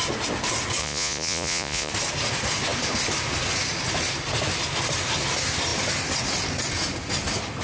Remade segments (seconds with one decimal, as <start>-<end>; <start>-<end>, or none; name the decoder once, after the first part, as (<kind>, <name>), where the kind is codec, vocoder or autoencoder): 0.8-1.9 (vocoder, Vocos)